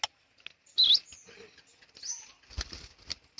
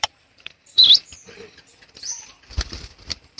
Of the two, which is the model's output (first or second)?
second